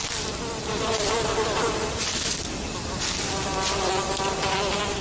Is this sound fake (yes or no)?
no